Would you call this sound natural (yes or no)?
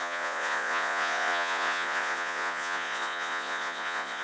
no